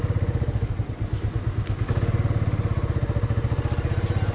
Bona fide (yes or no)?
yes